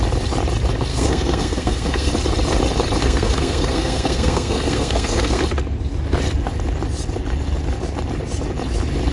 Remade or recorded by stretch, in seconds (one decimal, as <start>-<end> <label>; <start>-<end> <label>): 0.0-0.9 recorded; 0.9-2.1 remade; 2.1-3.0 recorded; 3.0-5.4 remade; 5.4-9.1 recorded